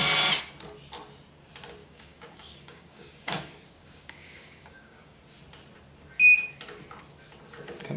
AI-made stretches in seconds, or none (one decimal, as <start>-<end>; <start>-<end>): 1.8-5.2